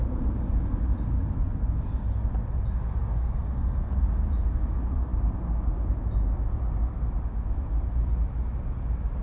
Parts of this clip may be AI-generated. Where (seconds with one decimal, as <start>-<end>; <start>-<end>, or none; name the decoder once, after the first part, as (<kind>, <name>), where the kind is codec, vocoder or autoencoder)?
3.0-3.8 (codec, DAC)